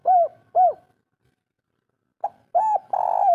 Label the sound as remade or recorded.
recorded